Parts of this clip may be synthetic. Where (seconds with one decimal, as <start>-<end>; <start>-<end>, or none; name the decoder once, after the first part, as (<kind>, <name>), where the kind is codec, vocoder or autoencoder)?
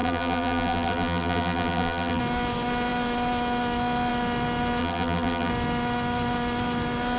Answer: 0.0-2.2 (vocoder, BigVGAN v2); 4.8-5.5